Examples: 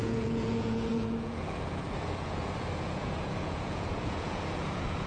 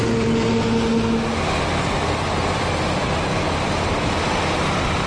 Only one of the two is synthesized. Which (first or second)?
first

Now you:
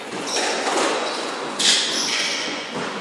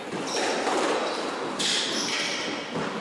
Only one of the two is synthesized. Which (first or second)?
first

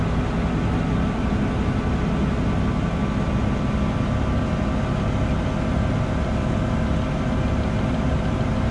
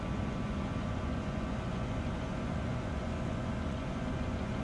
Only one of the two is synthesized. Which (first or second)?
second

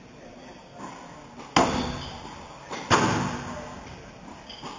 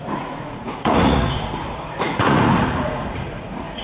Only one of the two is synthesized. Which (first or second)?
second